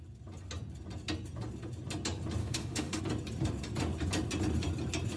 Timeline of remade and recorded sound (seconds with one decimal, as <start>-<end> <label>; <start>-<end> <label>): 0.0-2.4 recorded; 2.4-3.0 remade; 3.0-5.2 recorded